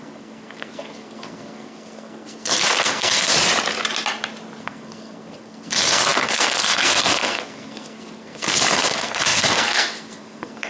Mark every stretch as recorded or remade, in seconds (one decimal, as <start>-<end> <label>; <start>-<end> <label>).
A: 0.0-3.3 remade; 3.3-4.6 recorded; 4.6-10.7 remade